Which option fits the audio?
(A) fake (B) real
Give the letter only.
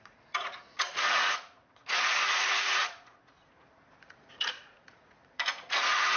A